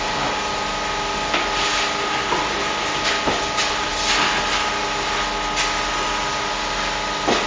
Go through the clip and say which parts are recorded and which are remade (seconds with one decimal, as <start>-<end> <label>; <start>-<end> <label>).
0.0-7.5 recorded